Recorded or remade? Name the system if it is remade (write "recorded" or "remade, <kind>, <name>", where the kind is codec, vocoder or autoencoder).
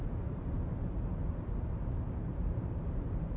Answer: recorded